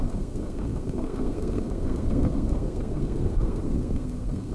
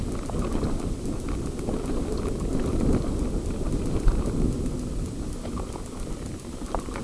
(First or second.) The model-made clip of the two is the first